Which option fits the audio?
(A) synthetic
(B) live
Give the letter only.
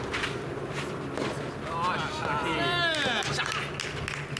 B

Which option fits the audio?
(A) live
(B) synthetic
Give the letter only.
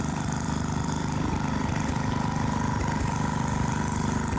B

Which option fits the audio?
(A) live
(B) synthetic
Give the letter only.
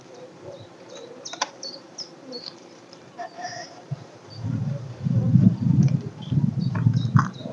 B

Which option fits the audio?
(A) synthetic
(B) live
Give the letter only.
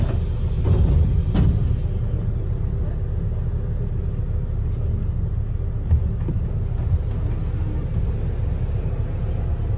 B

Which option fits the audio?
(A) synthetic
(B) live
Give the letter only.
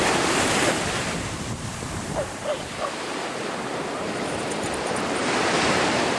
A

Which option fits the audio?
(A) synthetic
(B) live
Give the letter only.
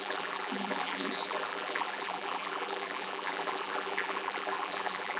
A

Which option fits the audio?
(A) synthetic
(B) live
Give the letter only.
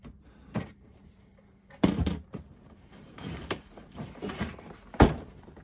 A